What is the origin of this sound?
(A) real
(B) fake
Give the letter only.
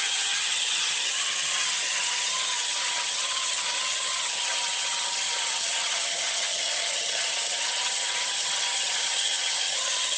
B